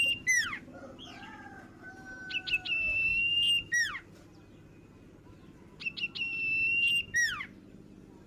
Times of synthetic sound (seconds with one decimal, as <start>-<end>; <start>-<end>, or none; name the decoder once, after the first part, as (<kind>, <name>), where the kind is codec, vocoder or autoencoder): none